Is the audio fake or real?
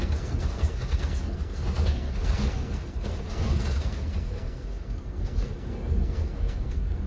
fake